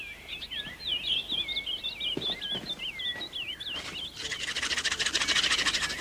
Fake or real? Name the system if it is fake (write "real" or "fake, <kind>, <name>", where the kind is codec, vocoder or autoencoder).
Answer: real